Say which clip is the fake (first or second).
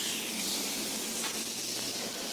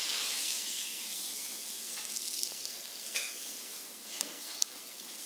second